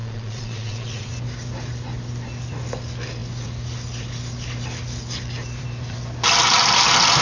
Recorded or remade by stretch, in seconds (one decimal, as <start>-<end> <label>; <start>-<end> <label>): 0.0-1.1 remade; 1.1-7.2 recorded